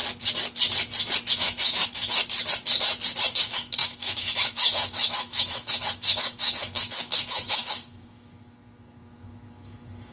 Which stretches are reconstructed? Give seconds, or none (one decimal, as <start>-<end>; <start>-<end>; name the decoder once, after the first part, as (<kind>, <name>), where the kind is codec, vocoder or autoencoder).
1.3-2.2 (autoencoder, DAC-VAE); 3.4-10.1